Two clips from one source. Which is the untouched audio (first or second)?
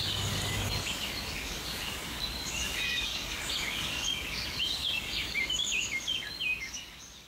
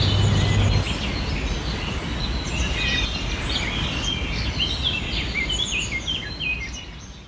second